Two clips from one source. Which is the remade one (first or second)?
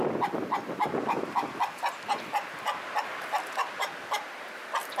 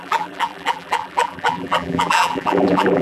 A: second